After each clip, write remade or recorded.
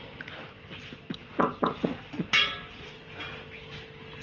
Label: recorded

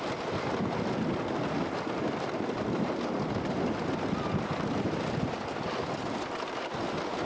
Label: recorded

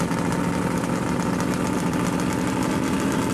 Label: recorded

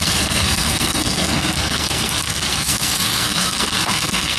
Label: remade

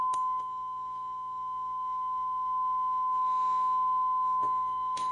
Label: remade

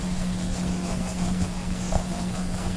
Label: remade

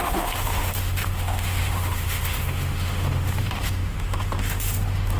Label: remade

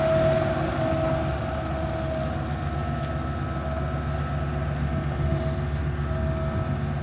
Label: recorded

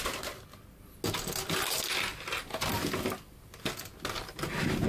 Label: recorded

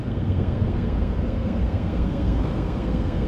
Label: remade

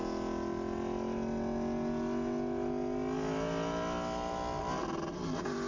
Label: recorded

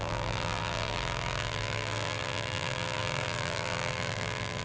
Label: remade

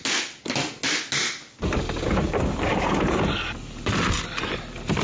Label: recorded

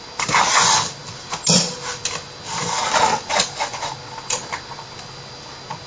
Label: recorded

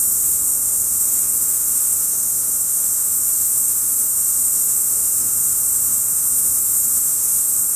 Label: remade